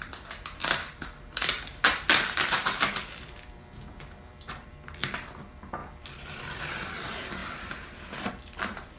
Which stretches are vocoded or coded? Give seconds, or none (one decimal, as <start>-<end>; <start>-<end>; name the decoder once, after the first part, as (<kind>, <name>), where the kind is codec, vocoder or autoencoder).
0.0-9.0 (vocoder, BigVGAN v2)

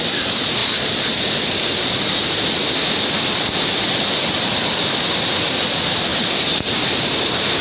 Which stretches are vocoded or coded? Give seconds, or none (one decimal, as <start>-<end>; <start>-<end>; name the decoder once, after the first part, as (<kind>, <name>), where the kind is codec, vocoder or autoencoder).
6.1-7.6 (vocoder, BigVGAN v2)

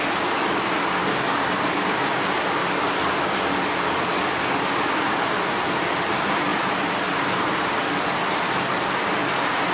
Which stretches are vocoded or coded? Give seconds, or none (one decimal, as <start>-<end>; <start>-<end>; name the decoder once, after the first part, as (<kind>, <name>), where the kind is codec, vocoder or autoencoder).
2.6-5.0 (vocoder, BigVGAN v2); 6.5-8.6